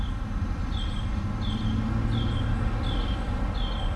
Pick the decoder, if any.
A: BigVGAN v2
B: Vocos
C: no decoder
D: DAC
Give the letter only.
C